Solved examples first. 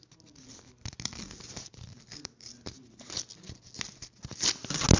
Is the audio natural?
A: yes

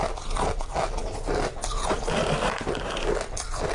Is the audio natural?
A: yes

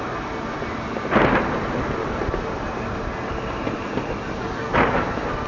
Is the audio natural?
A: yes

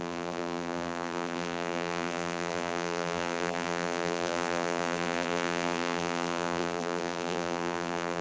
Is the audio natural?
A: no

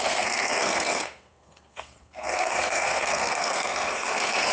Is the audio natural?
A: no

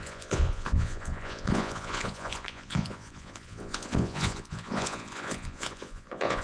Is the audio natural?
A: no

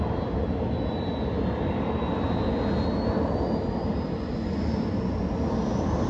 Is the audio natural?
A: yes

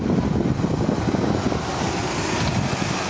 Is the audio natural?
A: yes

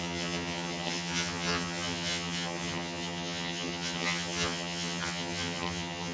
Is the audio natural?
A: no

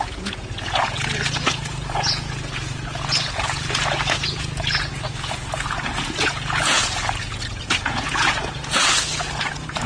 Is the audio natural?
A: no